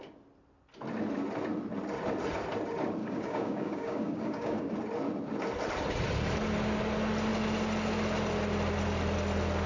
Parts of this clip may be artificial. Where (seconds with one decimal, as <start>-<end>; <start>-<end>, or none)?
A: 3.0-4.7